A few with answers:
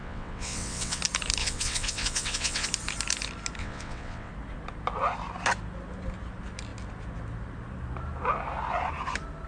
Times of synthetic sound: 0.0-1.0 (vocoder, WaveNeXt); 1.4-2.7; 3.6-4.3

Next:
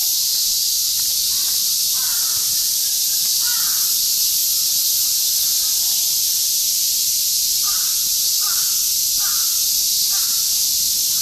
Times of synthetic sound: 0.0-4.4 (vocoder, BigVGAN v2); 5.8-11.2

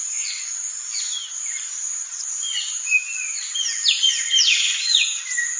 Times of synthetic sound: 1.0-3.1 (vocoder, Vocos); 3.9-5.6

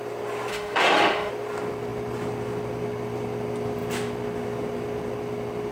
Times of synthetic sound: 0.5-1.3 (autoencoder, DAC-VAE)

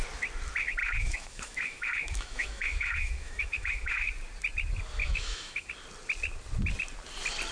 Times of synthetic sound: 0.8-4.1 (autoencoder, DAC-VAE); 5.0-5.7

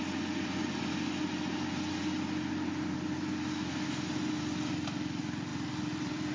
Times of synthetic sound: 5.5-6.3 (vocoder, BigVGAN v2)

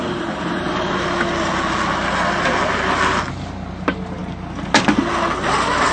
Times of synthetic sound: none